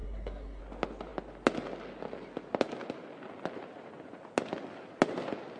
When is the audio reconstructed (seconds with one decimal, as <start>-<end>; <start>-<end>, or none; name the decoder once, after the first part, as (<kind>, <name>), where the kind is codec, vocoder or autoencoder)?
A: 0.0-0.6 (codec, SNAC)